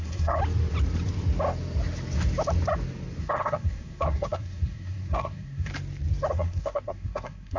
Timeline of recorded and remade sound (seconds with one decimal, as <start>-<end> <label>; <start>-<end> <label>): 0.0-0.4 remade; 0.4-3.2 recorded; 3.2-5.7 remade; 5.7-6.3 recorded; 6.3-7.6 remade

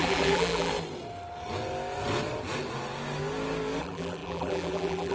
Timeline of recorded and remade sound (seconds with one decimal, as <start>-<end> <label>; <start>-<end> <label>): 0.0-0.7 remade; 0.7-3.8 recorded; 3.8-5.1 remade

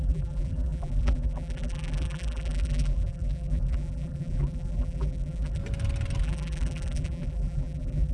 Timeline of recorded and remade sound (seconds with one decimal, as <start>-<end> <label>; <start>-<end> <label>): 0.0-5.6 remade; 5.6-6.2 recorded; 6.2-8.1 remade

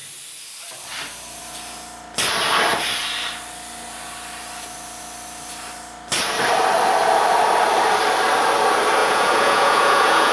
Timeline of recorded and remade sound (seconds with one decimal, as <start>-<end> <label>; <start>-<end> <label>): 0.0-9.0 recorded; 9.0-10.3 remade